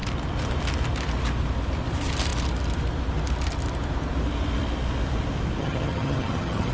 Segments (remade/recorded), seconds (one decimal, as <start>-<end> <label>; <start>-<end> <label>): 0.0-5.6 recorded; 5.6-6.7 remade